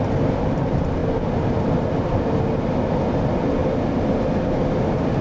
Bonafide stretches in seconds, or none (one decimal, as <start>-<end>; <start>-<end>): 0.0-5.2